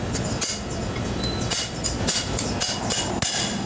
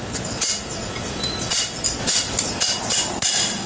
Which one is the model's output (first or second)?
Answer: second